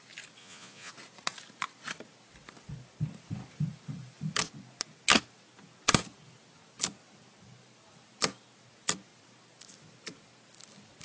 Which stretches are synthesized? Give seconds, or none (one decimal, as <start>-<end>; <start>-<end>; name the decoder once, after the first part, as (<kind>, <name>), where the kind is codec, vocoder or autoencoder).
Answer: 0.4-0.9 (vocoder, Vocos)